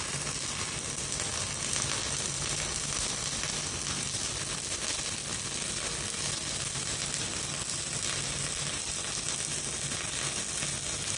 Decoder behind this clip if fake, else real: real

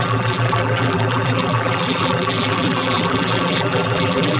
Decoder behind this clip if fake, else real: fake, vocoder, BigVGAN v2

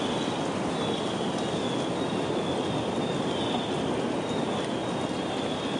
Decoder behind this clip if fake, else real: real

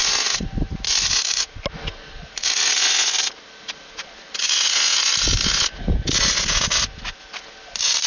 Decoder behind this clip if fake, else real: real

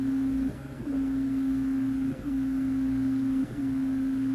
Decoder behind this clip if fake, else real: fake, codec, SNAC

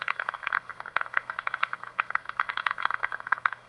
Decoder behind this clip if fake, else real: fake, codec, SNAC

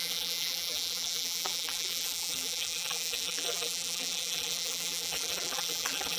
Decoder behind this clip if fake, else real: fake, vocoder, BigVGAN v2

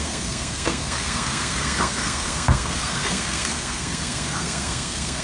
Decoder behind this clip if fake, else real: fake, codec, SNAC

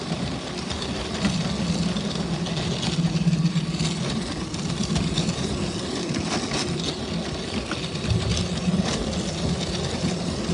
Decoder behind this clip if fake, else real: real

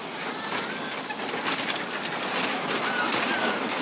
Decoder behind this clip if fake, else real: real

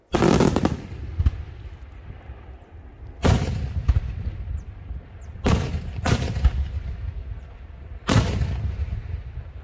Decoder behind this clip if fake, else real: real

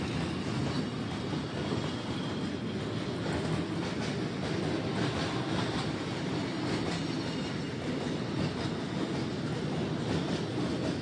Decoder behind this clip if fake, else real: real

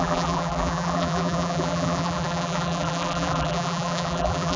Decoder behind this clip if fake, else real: fake, vocoder, BigVGAN v2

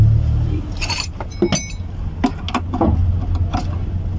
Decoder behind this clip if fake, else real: real